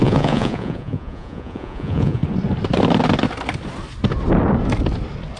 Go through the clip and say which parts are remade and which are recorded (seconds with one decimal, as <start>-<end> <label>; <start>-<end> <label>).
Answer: 0.0-2.2 remade; 2.2-5.4 recorded